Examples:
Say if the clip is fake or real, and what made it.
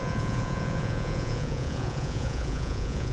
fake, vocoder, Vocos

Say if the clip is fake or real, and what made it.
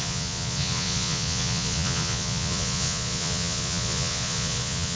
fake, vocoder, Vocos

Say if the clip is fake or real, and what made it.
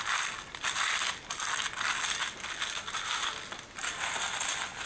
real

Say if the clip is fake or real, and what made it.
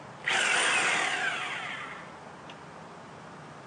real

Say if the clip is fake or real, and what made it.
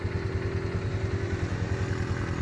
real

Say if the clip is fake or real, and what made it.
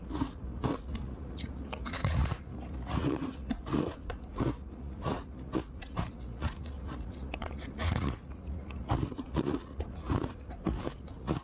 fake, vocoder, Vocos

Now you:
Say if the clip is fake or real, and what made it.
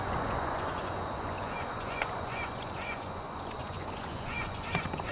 fake, vocoder, Vocos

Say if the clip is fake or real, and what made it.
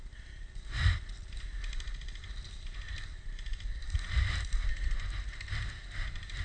real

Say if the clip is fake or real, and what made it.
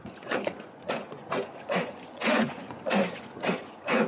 fake, vocoder, Vocos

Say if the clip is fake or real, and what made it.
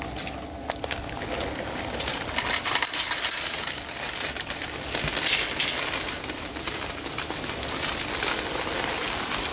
real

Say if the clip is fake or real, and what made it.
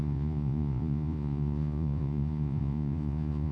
fake, vocoder, Vocos